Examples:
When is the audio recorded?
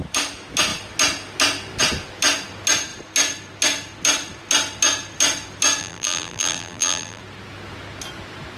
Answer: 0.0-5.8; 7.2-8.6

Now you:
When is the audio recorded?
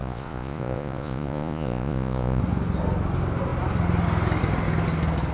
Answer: 2.4-5.3